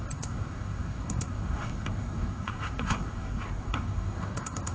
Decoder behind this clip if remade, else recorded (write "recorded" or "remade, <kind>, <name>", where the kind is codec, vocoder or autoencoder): remade, codec, SNAC